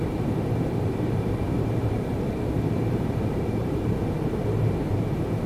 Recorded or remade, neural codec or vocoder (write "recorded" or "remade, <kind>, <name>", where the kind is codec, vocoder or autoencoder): remade, vocoder, BigVGAN v2